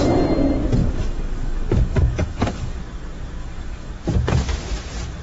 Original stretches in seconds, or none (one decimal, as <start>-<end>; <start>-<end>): 0.0-0.8; 2.8-3.4; 3.9-5.2

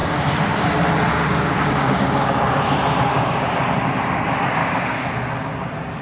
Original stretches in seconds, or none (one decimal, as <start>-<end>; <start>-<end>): 0.0-1.1; 2.3-3.1; 3.6-4.6; 5.1-6.0